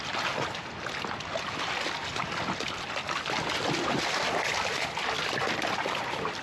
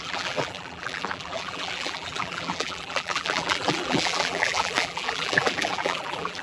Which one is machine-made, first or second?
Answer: second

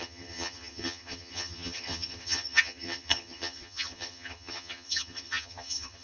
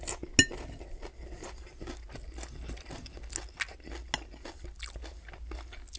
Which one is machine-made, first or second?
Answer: first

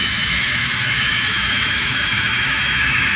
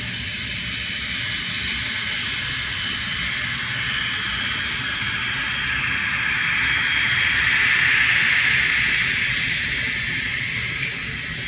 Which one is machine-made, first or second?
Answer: first